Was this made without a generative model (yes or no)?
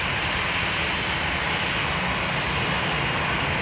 yes